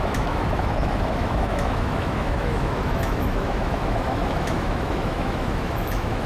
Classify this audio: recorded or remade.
remade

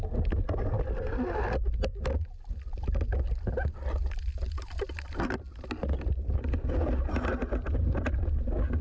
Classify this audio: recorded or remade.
recorded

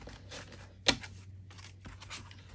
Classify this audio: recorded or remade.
recorded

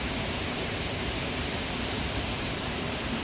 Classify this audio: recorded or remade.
remade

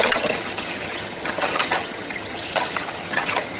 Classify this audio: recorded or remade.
remade